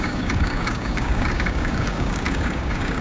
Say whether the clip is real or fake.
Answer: fake